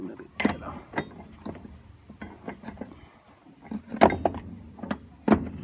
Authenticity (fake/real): real